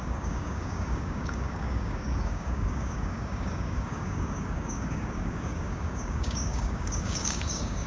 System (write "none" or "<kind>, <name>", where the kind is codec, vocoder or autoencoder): codec, DAC